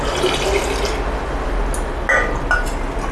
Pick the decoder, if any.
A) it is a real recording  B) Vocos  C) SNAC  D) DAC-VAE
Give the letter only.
A